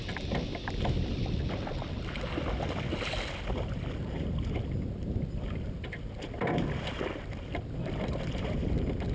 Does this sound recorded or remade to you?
recorded